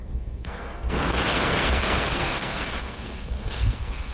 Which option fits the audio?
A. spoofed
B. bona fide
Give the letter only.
A